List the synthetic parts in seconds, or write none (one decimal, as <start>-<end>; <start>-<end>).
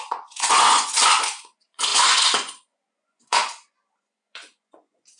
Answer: 0.0-5.2